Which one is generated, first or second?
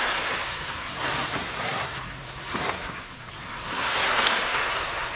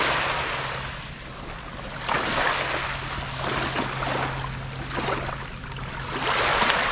first